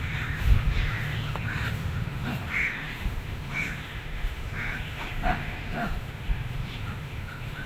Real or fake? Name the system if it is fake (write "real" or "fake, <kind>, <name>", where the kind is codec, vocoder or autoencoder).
fake, autoencoder, DAC-VAE